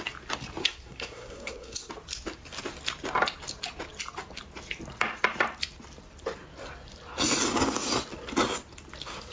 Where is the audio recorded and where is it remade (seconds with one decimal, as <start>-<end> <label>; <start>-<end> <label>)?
0.0-0.6 recorded; 0.6-1.9 remade; 1.9-9.3 recorded